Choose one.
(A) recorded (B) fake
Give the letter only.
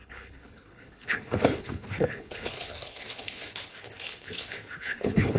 B